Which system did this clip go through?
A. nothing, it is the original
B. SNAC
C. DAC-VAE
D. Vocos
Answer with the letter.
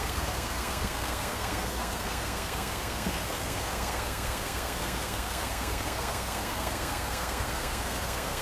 B